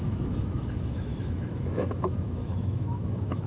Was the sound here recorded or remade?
remade